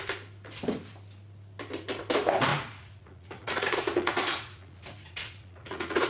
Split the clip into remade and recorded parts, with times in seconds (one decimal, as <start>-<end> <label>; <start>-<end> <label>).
0.0-2.5 recorded; 2.5-6.1 remade